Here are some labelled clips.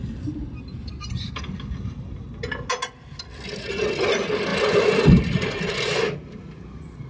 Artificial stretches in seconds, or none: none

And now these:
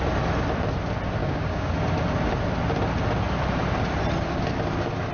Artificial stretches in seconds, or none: 1.2-1.7 (codec, DAC)

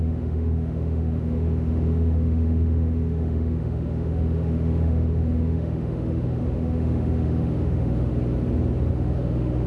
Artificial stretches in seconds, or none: 0.0-8.1 (autoencoder, DAC-VAE); 8.9-9.7

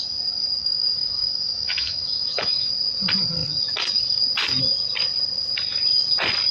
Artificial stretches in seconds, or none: 0.6-2.7 (autoencoder, DAC-VAE)

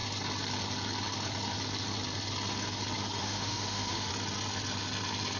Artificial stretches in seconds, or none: 3.2-4.1 (autoencoder, DAC-VAE)

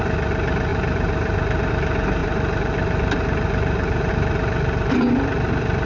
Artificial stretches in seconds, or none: 0.7-1.7 (vocoder, BigVGAN v2); 2.2-4.1

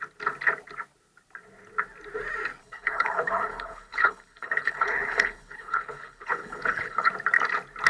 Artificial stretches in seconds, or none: 2.6-7.1 (codec, HILCodec)

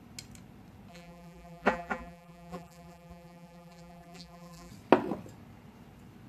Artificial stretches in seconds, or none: 0.9-4.7 (vocoder, BigVGAN v2)